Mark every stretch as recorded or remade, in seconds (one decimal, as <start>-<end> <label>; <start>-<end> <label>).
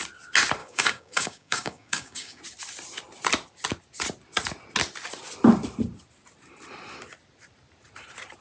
0.0-0.6 recorded; 0.6-2.4 remade; 2.4-8.4 recorded